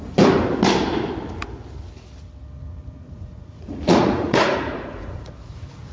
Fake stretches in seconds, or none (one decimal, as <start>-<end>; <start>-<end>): 3.0-5.3